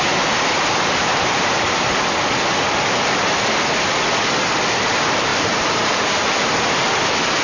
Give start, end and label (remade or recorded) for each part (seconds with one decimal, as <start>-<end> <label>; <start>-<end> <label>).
0.0-1.1 recorded; 1.1-2.0 remade; 2.0-5.3 recorded; 5.3-6.7 remade; 6.7-7.4 recorded